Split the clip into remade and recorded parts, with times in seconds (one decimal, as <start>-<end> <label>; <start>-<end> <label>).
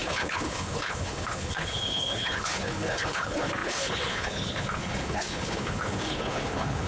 0.0-6.9 remade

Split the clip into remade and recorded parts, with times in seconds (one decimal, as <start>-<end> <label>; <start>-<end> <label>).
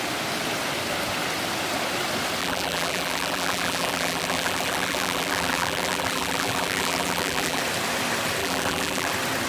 0.0-2.4 recorded; 2.4-7.6 remade; 7.6-8.4 recorded; 8.4-9.1 remade; 9.1-9.5 recorded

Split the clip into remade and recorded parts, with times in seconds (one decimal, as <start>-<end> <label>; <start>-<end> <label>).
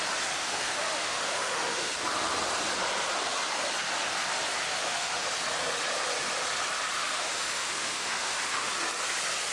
0.0-0.4 recorded; 0.4-1.9 remade; 1.9-4.7 recorded; 4.7-5.3 remade; 5.3-6.9 recorded; 6.9-8.7 remade; 8.7-9.5 recorded